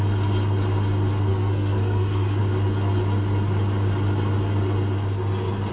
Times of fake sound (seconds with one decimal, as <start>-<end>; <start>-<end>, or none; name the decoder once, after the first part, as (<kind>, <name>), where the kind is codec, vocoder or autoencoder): 1.3-2.4 (codec, SNAC)

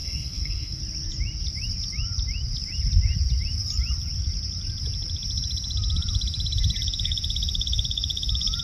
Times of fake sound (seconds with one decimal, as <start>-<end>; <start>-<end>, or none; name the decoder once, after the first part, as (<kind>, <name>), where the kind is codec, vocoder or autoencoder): 0.0-0.8 (codec, SNAC)

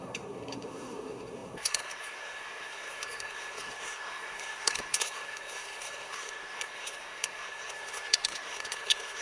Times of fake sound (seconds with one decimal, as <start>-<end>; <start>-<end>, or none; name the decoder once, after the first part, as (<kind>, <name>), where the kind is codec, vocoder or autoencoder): 0.0-9.2 (codec, SNAC)

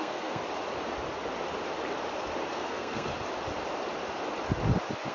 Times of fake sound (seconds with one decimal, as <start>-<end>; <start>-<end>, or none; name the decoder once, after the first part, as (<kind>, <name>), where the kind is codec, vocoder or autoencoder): 0.0-0.4 (codec, SNAC); 2.5-3.1

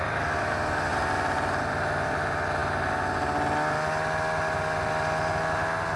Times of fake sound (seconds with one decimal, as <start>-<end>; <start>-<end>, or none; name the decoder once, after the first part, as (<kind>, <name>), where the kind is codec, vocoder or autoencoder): none

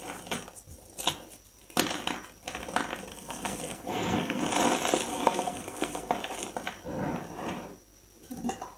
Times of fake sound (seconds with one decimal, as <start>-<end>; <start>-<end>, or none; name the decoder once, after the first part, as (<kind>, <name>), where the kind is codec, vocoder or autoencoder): 3.1-4.4 (codec, SNAC); 5.1-6.1

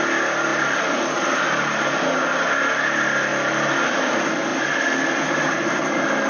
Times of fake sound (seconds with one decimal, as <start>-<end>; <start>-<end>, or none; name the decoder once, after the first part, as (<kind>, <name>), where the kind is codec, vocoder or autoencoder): none

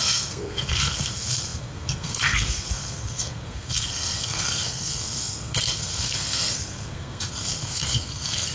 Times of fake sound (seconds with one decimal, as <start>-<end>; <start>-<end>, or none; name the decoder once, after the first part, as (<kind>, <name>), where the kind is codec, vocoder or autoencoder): 0.0-8.5 (codec, SNAC)